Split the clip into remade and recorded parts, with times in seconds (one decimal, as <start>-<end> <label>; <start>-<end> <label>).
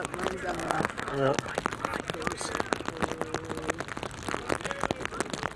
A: 0.0-0.5 recorded; 0.5-1.5 remade; 1.5-5.6 recorded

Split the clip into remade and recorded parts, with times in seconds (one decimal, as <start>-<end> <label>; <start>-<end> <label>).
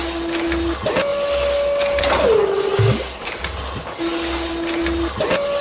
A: 0.0-5.6 recorded